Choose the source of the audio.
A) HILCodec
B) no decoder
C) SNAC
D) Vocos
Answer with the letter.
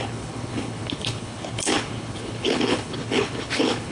A